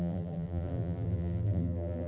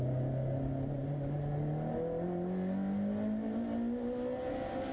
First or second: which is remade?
first